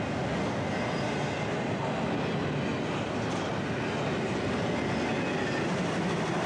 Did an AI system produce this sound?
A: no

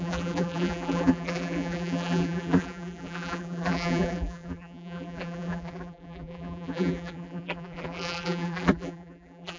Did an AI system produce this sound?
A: yes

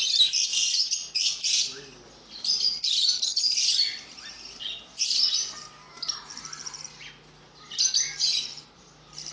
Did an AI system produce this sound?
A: no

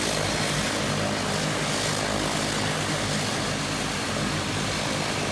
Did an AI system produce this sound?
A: no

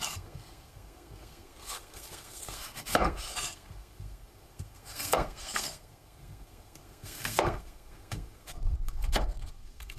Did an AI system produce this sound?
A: yes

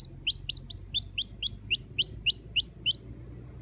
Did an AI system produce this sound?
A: no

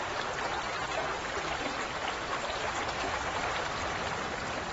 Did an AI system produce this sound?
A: no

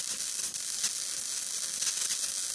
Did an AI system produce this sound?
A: no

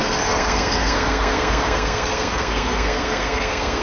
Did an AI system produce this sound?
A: yes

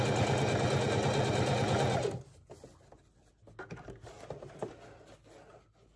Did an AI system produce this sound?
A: no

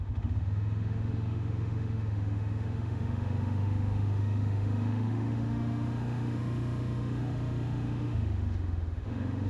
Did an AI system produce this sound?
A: yes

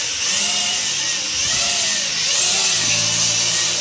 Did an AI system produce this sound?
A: no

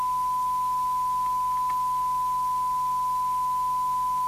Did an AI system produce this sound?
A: no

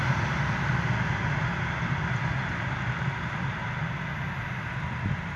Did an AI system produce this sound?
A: no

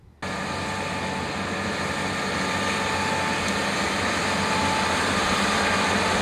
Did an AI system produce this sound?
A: no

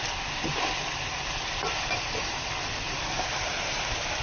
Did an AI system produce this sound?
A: no